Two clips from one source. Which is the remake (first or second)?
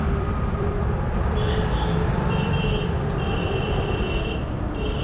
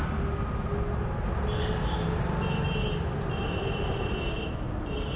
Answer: first